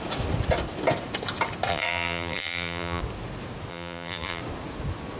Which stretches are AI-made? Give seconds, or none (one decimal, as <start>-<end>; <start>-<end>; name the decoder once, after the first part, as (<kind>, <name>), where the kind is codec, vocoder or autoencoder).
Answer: 1.7-3.0 (vocoder, BigVGAN v2); 3.7-4.4